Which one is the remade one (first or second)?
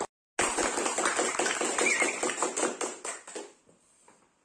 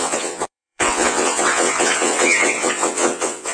second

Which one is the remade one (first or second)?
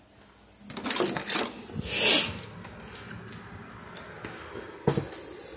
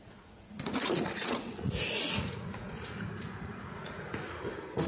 second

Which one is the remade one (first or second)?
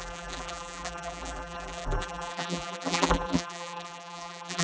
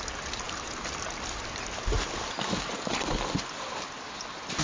first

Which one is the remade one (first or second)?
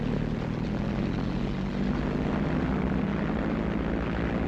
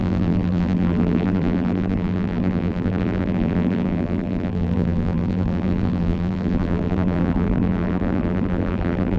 second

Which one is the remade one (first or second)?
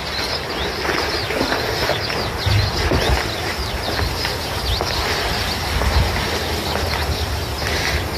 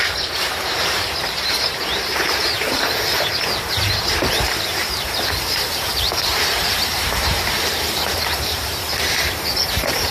second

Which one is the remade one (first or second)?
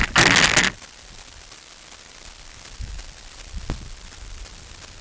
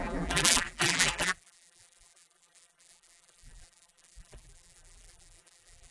second